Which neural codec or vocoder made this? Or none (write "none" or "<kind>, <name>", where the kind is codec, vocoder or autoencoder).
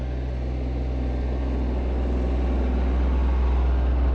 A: none